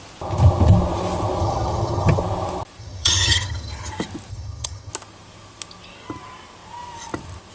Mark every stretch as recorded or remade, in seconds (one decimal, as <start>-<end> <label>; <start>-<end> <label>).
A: 0.0-1.4 recorded; 1.4-2.2 remade; 2.2-2.8 recorded; 2.8-3.9 remade; 3.9-4.3 recorded; 4.3-4.9 remade; 4.9-7.5 recorded